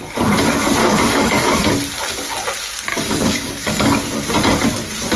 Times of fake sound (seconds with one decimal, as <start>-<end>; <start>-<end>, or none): 0.8-1.7; 2.9-4.0